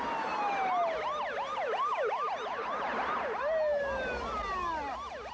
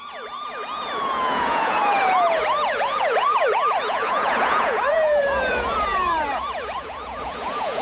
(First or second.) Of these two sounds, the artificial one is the second